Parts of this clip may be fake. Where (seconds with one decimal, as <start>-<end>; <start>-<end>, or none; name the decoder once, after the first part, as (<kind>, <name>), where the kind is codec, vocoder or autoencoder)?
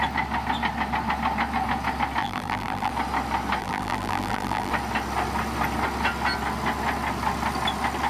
2.2-2.9 (vocoder, BigVGAN v2); 3.6-4.7